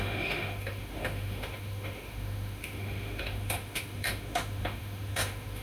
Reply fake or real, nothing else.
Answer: fake